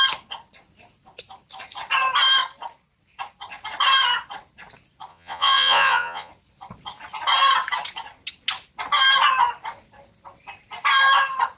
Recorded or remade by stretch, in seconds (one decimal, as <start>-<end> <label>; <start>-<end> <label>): 0.0-5.1 recorded; 5.1-6.3 remade; 6.3-11.6 recorded